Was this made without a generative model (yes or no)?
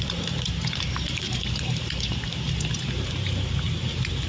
no